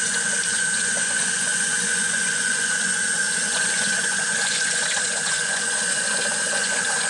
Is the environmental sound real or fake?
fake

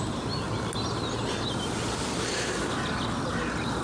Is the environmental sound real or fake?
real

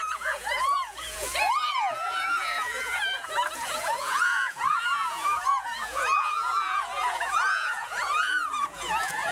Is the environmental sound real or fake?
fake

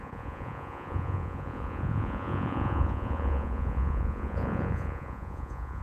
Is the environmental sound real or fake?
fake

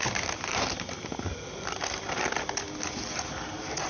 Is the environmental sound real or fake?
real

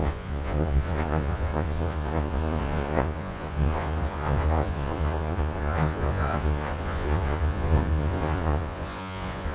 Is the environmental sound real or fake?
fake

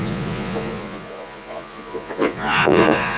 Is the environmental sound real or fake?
fake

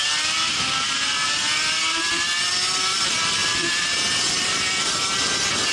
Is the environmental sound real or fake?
real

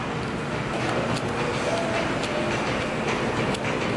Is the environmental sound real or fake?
real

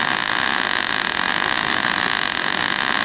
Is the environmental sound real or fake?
real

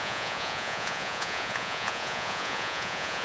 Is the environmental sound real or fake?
fake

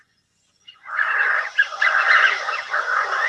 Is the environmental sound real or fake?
fake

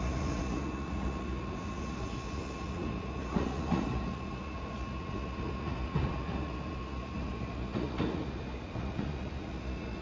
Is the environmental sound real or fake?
fake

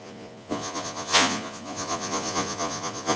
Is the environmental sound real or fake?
fake